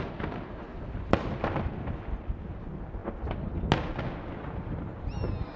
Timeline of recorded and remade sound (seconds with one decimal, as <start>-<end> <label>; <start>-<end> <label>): 0.0-0.7 recorded; 0.7-1.8 remade; 1.8-5.6 recorded